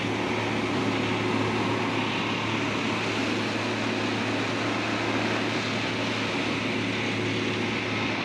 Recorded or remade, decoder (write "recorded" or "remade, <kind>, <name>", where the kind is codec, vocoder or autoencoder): recorded